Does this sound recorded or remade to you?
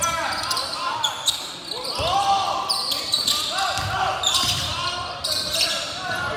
recorded